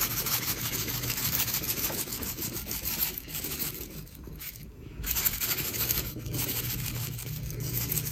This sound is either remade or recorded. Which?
remade